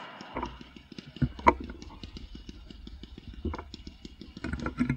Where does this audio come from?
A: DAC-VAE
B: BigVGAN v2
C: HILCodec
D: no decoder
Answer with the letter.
D